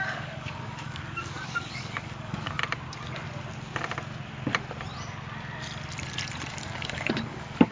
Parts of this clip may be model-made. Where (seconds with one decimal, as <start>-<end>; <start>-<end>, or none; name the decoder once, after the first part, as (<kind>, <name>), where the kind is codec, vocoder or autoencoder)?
0.0-2.6 (codec, DAC); 6.5-7.7